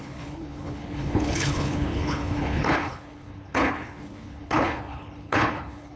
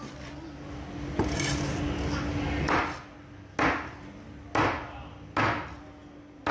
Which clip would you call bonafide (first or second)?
second